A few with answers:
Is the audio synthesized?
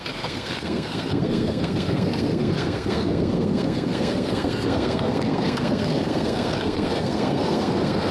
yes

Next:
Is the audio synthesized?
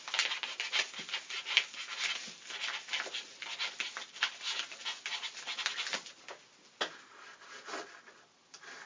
no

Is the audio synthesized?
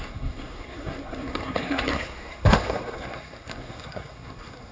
yes